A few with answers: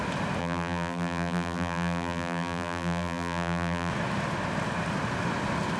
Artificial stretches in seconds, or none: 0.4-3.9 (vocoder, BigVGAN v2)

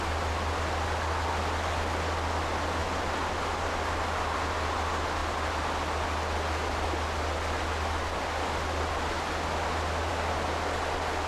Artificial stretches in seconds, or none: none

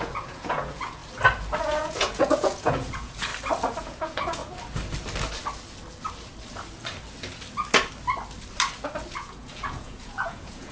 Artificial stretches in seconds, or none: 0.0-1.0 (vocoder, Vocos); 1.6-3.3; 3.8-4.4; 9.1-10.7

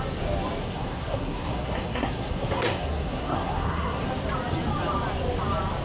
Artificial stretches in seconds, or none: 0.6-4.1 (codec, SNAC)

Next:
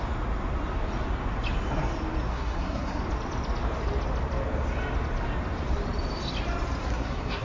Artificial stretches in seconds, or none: 2.3-3.0 (codec, SNAC); 6.8-7.4